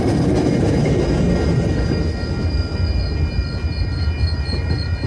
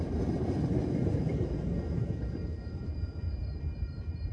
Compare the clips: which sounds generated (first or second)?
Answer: second